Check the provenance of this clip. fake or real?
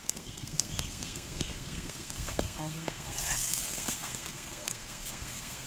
fake